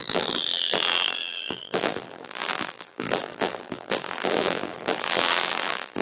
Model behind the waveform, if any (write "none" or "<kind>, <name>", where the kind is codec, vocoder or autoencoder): vocoder, BigVGAN v2